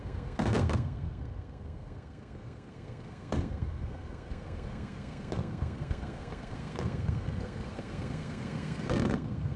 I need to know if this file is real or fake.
fake